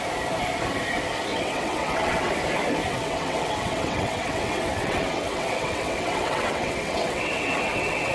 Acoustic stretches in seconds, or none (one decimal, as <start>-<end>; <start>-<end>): 0.0-1.3; 2.3-2.9